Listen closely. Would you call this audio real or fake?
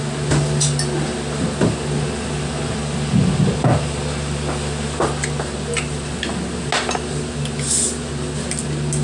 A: real